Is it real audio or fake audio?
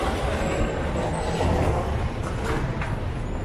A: real